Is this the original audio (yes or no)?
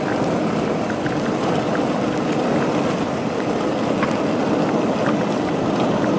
yes